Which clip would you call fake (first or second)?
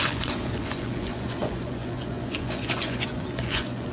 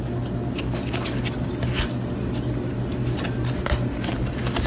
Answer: first